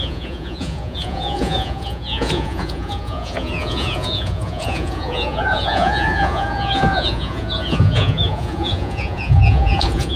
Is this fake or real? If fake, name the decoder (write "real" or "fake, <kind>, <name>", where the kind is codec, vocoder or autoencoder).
fake, vocoder, Vocos